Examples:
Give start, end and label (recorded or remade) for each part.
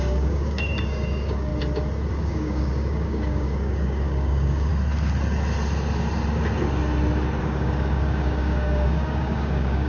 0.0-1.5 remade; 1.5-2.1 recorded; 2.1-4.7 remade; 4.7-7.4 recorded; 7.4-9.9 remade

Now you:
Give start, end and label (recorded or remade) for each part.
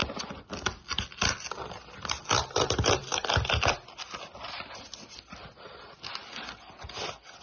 0.0-7.4 recorded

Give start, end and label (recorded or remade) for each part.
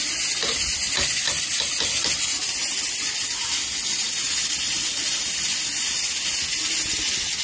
0.0-0.7 recorded; 0.7-3.0 remade; 3.0-7.4 recorded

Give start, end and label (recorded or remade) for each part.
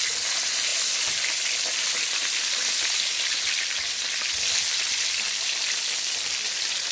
0.0-6.9 recorded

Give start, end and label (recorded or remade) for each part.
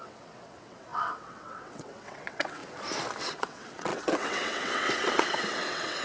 0.0-2.6 remade; 2.6-3.2 recorded; 3.2-6.0 remade